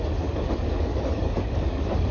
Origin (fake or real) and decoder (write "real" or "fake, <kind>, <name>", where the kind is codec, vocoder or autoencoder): fake, codec, DAC